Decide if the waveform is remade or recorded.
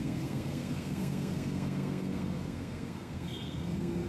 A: remade